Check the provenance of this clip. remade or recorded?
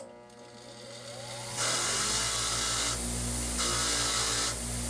recorded